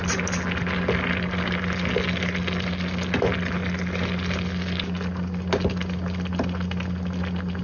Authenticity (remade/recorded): recorded